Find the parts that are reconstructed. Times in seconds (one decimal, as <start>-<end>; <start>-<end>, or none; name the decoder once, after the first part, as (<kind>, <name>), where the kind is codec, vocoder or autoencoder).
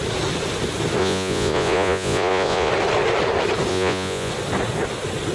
1.0-2.7 (vocoder, Vocos); 3.7-4.3